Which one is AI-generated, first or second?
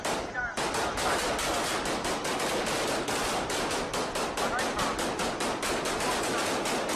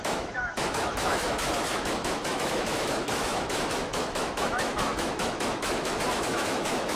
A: second